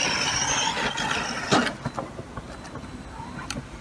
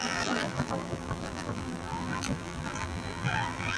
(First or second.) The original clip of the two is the first